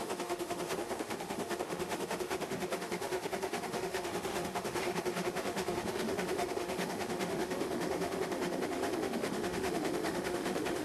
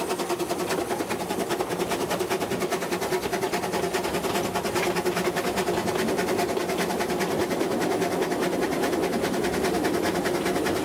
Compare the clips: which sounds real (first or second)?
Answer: second